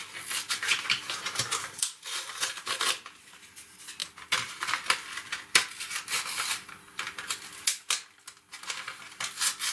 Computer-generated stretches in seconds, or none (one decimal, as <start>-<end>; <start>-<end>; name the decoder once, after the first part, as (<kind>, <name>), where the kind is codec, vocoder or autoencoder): none